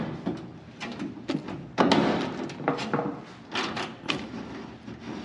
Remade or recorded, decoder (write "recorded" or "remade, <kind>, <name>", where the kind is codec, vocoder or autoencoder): recorded